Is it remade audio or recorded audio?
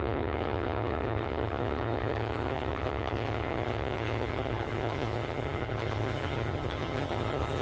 remade